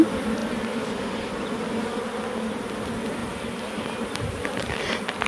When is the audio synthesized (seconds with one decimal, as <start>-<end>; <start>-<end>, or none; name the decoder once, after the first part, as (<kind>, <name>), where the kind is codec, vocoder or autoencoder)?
none

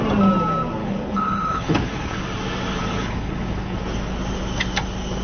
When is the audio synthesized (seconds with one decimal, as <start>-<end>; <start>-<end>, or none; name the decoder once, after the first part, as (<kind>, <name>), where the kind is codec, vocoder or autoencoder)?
0.8-2.2 (codec, HILCodec); 2.8-3.8

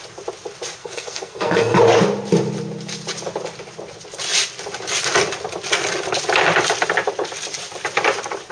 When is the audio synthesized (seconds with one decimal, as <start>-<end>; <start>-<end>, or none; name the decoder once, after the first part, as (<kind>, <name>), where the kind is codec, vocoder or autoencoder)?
0.8-1.8 (codec, SNAC)

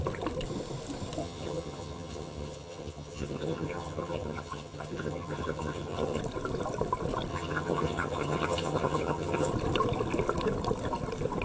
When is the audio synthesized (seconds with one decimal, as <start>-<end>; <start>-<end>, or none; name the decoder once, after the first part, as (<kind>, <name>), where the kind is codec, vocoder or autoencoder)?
1.2-6.2 (vocoder, HiFi-GAN); 7.3-9.5

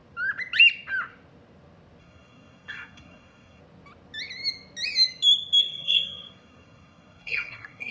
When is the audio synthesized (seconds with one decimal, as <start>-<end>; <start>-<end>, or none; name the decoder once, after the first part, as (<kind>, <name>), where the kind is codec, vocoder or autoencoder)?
2.0-3.6 (codec, SNAC); 5.6-7.9

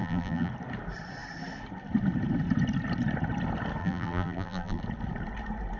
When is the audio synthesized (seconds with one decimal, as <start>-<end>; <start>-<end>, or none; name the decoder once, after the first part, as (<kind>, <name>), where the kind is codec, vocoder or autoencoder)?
0.0-0.5 (vocoder, BigVGAN v2); 3.8-4.8

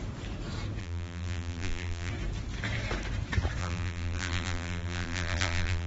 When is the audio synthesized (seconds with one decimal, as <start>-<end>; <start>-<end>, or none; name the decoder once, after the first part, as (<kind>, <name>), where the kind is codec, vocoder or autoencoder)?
0.8-2.1 (vocoder, BigVGAN v2); 3.6-5.9